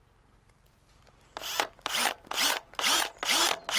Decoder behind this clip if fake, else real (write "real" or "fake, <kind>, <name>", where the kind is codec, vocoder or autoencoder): fake, vocoder, BigVGAN v2